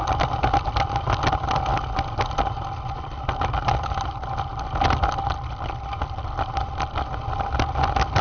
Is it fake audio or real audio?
real